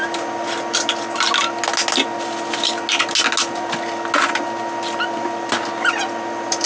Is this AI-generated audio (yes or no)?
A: no